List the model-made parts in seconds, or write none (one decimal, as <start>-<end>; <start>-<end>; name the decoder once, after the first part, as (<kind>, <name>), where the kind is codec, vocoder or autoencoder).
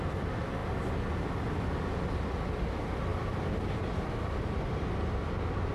none